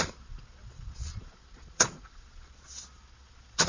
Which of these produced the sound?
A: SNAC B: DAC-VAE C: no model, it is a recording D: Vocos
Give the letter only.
D